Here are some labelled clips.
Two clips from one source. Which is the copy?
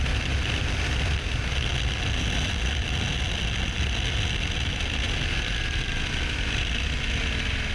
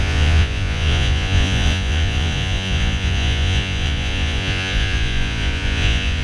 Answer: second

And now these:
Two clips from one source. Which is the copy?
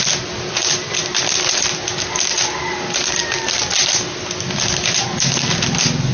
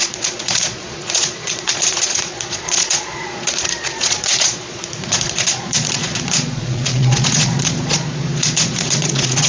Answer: second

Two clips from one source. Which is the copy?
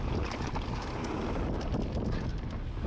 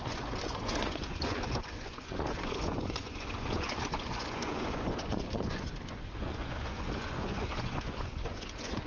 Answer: second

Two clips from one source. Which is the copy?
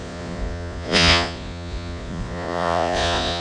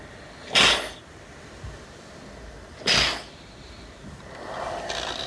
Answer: first